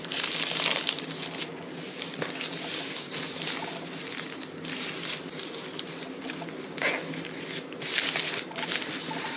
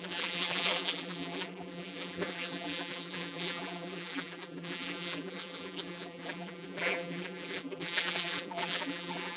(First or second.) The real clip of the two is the first